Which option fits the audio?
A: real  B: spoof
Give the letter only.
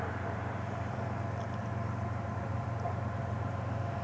B